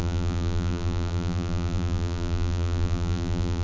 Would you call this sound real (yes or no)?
no